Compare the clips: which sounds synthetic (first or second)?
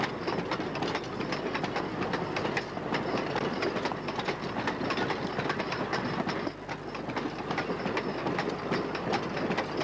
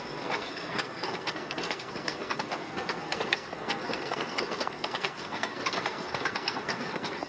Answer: second